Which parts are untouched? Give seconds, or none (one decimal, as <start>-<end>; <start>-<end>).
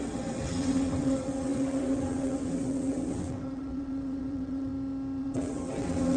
4.7-5.2